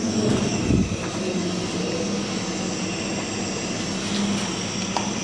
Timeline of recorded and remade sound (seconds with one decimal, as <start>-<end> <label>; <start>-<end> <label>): 0.0-5.2 recorded

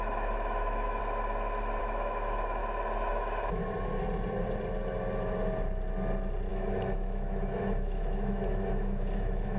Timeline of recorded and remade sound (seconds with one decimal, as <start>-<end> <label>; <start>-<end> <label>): 0.0-1.0 remade; 1.0-1.8 recorded; 1.8-2.6 remade; 2.6-3.1 recorded; 3.1-3.6 remade; 3.6-6.5 recorded; 6.5-9.6 remade

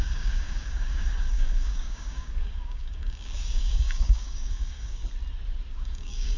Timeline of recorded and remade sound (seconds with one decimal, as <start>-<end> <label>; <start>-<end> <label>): 0.0-5.0 remade; 5.0-5.7 recorded; 5.7-6.4 remade

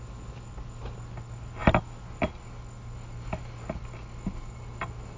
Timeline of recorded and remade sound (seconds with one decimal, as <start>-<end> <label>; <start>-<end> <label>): 0.0-5.2 recorded

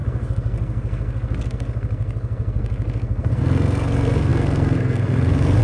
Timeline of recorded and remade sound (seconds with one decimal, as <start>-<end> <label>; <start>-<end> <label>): 0.0-5.6 remade

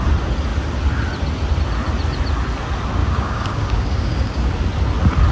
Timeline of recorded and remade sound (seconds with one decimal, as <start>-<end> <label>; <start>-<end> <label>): 0.0-3.0 recorded; 3.0-4.5 remade; 4.5-5.3 recorded

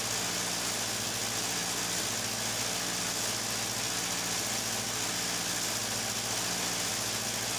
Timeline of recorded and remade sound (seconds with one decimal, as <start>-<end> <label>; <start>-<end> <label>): 0.0-7.6 recorded